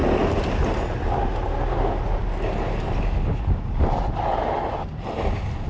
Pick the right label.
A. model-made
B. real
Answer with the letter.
B